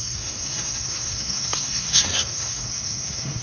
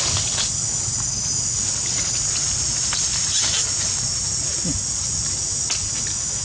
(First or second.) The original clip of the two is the second